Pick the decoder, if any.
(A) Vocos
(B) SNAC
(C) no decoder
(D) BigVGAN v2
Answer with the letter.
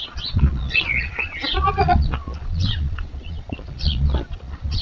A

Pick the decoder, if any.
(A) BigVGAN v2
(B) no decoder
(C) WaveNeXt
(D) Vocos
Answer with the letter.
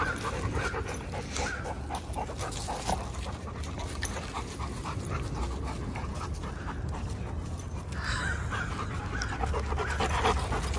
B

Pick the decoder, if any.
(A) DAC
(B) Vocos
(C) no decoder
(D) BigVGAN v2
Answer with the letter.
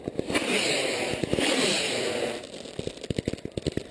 C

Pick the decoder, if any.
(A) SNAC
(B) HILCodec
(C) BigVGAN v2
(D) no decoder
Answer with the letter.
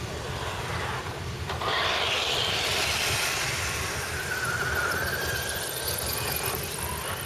D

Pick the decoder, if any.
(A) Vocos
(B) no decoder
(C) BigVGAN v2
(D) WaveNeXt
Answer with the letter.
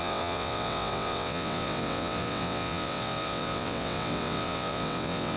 D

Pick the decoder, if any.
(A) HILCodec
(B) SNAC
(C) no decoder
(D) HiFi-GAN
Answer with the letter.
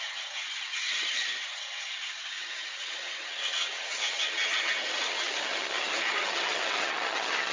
D